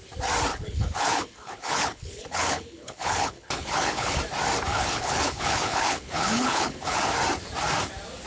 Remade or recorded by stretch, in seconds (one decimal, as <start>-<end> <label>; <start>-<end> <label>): 0.0-0.5 recorded; 0.5-4.2 remade; 4.2-4.7 recorded; 4.7-7.0 remade; 7.0-8.3 recorded